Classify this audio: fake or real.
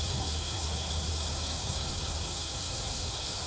fake